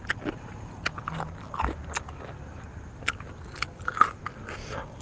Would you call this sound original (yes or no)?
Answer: yes